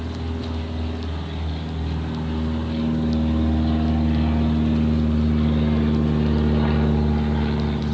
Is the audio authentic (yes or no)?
yes